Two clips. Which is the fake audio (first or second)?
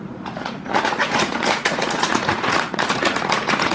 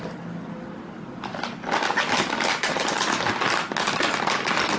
first